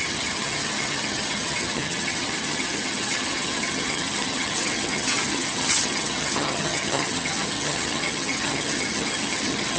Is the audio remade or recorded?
remade